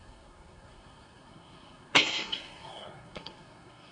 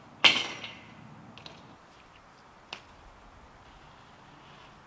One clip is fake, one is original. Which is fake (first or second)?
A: first